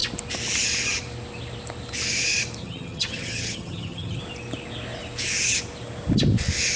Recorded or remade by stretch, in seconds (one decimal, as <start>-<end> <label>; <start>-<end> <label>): 0.0-2.6 recorded; 2.6-4.2 remade; 4.2-6.8 recorded